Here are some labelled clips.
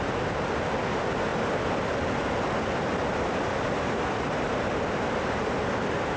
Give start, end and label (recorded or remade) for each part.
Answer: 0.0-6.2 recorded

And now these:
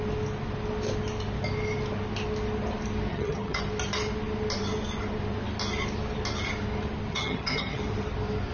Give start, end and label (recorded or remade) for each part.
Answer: 0.0-3.1 recorded; 3.1-3.6 remade; 3.6-7.1 recorded; 7.1-7.8 remade; 7.8-8.5 recorded

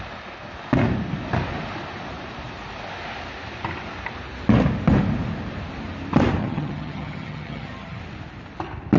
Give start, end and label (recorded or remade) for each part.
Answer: 0.0-6.4 recorded; 6.4-8.0 remade; 8.0-9.0 recorded

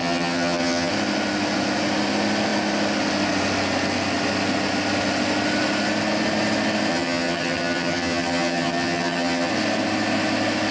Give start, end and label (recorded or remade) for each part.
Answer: 0.0-0.9 remade; 0.9-6.9 recorded; 6.9-9.5 remade; 9.5-10.7 recorded

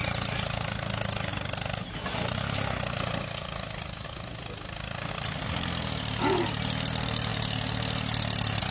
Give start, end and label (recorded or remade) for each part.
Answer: 0.0-8.7 recorded

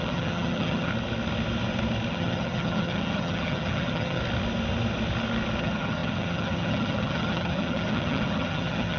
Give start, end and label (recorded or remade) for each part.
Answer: 0.0-0.9 remade; 0.9-2.1 recorded; 2.1-4.2 remade; 4.2-5.6 recorded; 5.6-9.0 remade

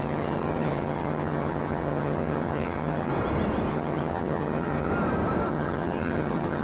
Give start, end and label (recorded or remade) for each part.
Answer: 0.0-3.1 remade; 3.1-3.7 recorded; 3.7-4.9 remade; 4.9-5.5 recorded; 5.5-6.6 remade